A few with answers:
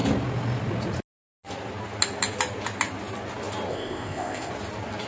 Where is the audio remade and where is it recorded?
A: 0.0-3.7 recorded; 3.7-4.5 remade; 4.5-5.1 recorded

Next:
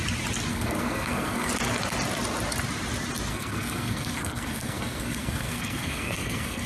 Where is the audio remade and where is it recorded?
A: 0.0-0.5 recorded; 0.5-1.5 remade; 1.5-3.3 recorded; 3.3-6.7 remade

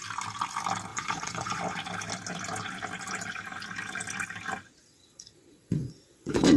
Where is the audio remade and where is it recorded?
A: 0.0-0.9 recorded; 0.9-1.6 remade; 1.6-4.8 recorded; 4.8-6.6 remade